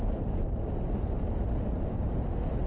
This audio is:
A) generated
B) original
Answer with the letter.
B